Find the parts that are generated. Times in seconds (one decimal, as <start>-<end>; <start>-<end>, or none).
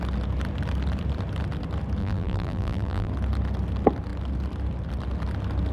2.0-3.1